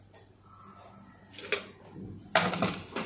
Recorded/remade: recorded